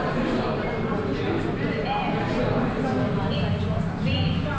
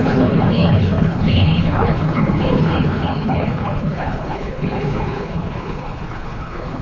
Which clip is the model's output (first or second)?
second